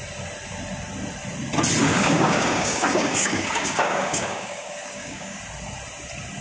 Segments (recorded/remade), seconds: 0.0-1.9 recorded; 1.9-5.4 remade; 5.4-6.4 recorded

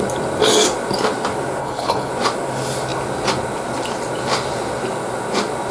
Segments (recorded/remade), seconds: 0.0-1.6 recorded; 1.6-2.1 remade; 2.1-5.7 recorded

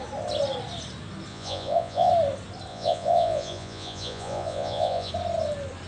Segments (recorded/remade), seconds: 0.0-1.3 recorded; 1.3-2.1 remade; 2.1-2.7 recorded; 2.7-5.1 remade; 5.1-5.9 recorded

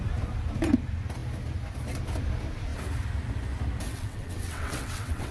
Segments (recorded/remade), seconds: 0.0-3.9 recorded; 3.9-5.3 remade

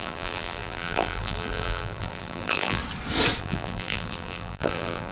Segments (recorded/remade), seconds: 0.0-2.8 remade; 2.8-3.4 recorded; 3.4-5.1 remade